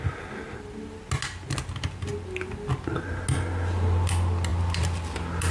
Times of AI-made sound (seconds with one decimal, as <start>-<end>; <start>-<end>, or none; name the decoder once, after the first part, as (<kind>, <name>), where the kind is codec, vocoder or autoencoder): none